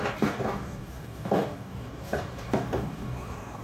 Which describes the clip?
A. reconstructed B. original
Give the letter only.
A